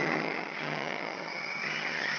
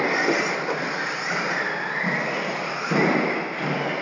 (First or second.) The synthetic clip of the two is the first